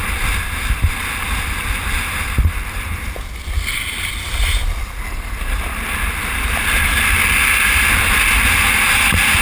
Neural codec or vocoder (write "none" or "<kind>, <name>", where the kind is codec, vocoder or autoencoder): none